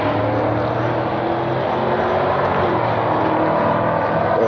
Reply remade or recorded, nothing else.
recorded